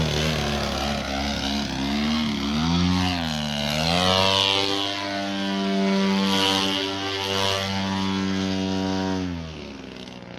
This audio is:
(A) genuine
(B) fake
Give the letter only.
A